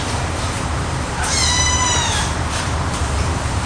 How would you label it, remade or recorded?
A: remade